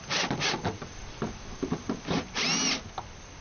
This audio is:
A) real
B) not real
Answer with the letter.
A